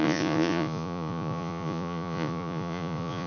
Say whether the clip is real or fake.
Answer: fake